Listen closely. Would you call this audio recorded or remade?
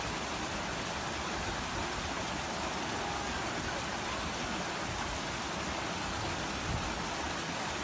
recorded